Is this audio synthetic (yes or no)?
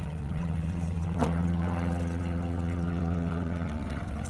yes